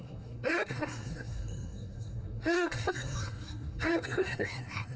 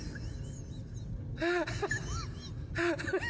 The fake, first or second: first